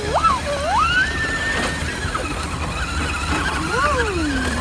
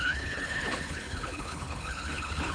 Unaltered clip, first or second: first